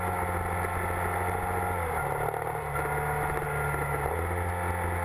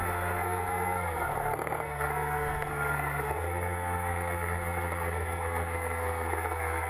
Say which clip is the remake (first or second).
second